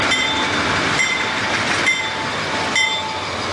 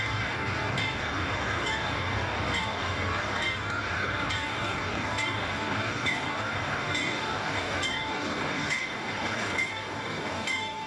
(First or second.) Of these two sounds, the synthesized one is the second